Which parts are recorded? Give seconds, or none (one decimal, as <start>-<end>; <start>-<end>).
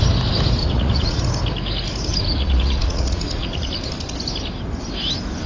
0.0-0.6; 1.2-2.1; 3.7-5.5